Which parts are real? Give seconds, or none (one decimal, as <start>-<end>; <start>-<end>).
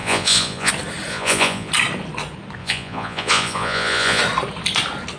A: 0.7-1.1; 1.7-2.6; 4.2-5.2